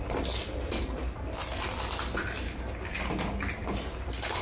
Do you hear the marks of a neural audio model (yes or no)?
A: no